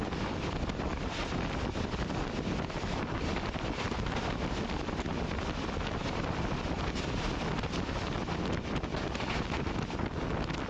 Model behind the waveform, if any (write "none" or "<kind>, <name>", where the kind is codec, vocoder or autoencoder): none